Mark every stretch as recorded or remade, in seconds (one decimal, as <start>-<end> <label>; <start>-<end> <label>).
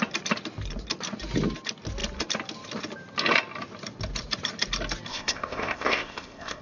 0.0-5.1 recorded; 5.1-6.6 remade